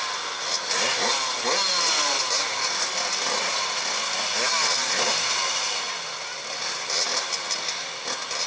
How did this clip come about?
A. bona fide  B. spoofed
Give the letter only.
A